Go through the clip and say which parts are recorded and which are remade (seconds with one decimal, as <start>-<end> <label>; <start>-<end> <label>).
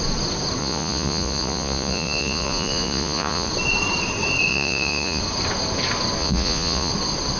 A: 0.0-0.6 recorded; 0.6-3.5 remade; 3.5-4.5 recorded; 4.5-5.2 remade; 5.2-6.2 recorded; 6.2-6.9 remade; 6.9-7.4 recorded